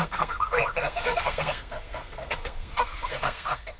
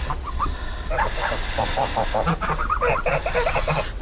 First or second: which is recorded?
second